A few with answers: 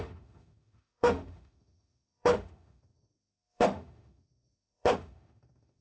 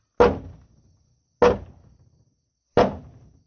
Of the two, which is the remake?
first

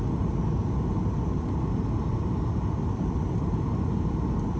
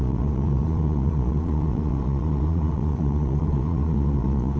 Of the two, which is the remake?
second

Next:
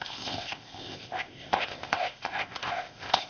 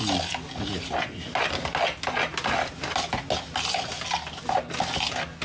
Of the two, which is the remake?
first